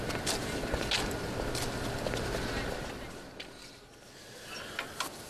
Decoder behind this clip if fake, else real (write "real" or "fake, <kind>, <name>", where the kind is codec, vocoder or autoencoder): real